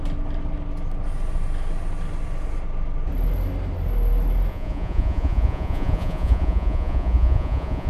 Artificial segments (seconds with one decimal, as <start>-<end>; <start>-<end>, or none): 4.5-7.9